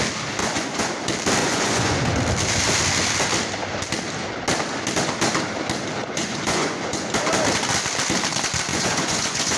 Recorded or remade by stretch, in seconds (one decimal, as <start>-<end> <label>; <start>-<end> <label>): 0.0-0.4 recorded; 0.4-0.9 remade; 0.9-1.4 recorded; 1.4-2.2 remade; 2.2-6.0 recorded; 6.0-7.1 remade; 7.1-8.7 recorded; 8.7-9.6 remade